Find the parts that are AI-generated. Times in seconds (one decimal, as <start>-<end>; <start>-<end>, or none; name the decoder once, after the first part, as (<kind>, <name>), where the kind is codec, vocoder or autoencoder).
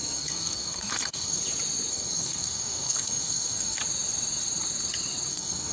0.0-1.4 (codec, SNAC); 1.9-3.8; 5.3-5.7